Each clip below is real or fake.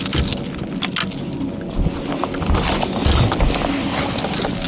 real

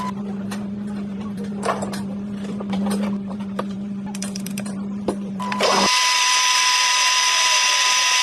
fake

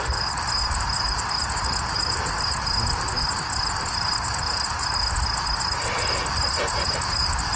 real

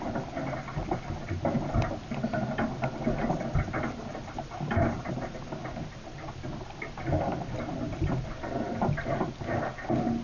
real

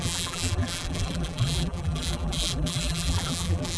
fake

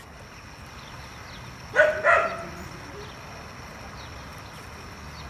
real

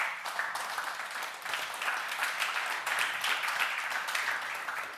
fake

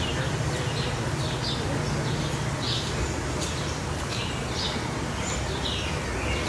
real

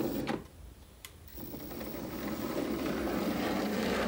fake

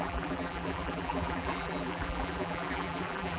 fake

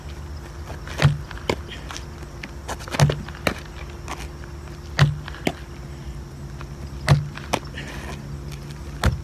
real